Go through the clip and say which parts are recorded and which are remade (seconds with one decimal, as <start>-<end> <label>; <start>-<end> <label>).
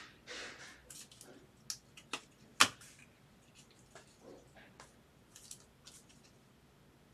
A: 0.0-7.1 recorded